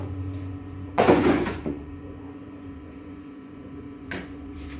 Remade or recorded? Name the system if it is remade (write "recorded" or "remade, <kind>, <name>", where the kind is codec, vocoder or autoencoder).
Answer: remade, vocoder, Vocos